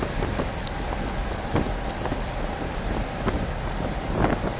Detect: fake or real real